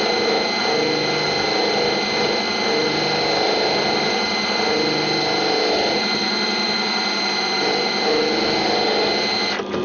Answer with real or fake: real